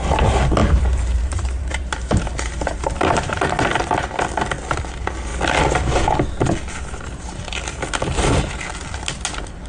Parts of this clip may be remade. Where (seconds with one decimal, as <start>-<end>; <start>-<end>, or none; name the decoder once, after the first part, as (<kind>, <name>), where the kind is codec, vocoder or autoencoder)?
0.6-3.7 (vocoder, BigVGAN v2)